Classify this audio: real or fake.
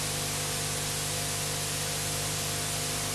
real